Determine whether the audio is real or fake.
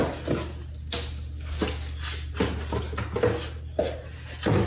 real